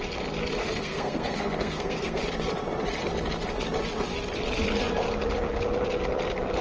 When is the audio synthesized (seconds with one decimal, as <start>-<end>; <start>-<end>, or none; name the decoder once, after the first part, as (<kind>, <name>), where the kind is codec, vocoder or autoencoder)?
0.6-2.2 (codec, SNAC)